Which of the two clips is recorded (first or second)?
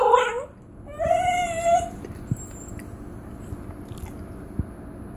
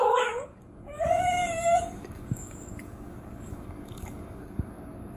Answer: first